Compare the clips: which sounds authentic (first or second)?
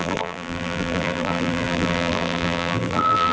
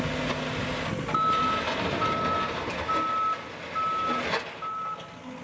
second